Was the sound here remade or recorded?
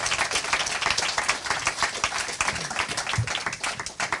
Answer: recorded